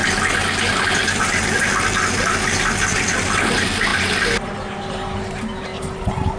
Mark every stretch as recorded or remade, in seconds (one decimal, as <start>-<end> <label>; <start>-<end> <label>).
0.0-6.4 recorded